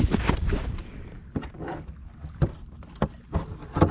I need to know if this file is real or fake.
real